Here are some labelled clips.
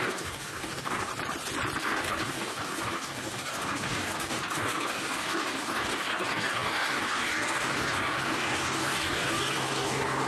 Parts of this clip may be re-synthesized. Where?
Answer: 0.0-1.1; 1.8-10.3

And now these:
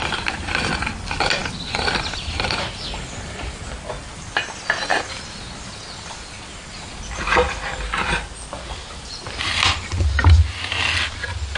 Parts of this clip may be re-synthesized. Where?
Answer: none

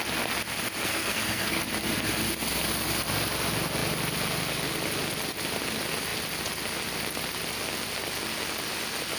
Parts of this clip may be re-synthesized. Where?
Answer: 0.8-1.6

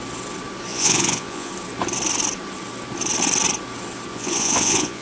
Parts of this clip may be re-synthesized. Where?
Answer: 0.7-1.5; 4.1-5.0

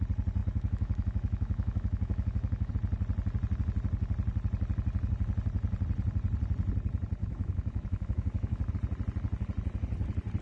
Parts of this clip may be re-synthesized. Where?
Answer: 0.4-2.7; 7.2-8.7